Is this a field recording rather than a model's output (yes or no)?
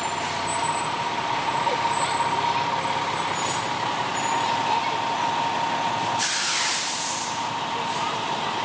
yes